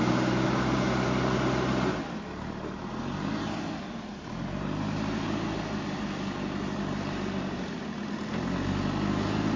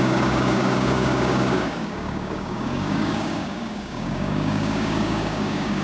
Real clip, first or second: first